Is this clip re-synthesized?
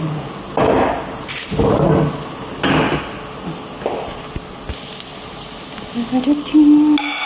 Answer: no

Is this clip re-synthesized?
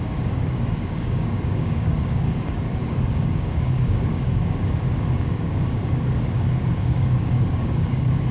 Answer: yes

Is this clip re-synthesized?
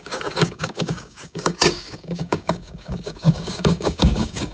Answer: yes